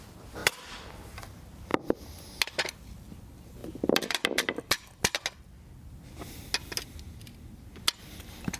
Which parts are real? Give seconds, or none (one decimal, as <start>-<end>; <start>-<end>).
0.0-8.6